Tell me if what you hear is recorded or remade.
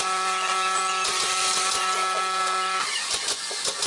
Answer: remade